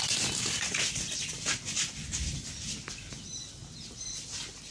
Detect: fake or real real